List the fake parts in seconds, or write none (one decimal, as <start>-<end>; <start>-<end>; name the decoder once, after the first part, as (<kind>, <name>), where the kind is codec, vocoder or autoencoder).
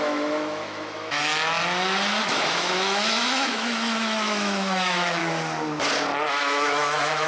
0.0-1.3 (autoencoder, DAC-VAE); 2.2-5.2; 6.3-7.3